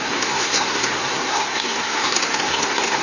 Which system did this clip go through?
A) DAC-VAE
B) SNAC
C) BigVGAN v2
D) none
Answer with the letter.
B